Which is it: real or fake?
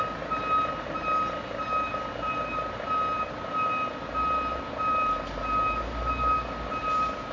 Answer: real